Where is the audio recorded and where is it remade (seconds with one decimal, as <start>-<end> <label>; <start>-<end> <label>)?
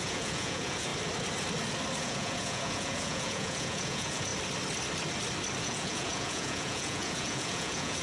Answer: 0.0-0.9 remade; 0.9-2.0 recorded; 2.0-4.3 remade; 4.3-5.6 recorded; 5.6-8.0 remade